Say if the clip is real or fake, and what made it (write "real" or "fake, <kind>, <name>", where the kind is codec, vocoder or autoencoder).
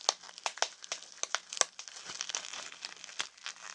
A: real